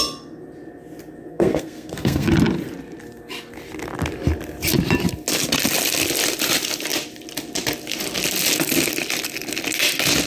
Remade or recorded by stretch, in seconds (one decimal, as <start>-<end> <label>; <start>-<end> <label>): 0.0-1.3 recorded; 1.3-2.3 remade; 2.3-10.3 recorded